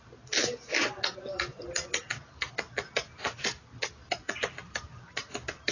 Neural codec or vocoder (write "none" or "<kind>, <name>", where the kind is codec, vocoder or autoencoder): none